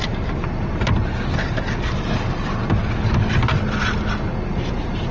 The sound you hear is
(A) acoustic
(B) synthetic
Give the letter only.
A